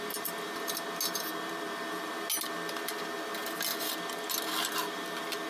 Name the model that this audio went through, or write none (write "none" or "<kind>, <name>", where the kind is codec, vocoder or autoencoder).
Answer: none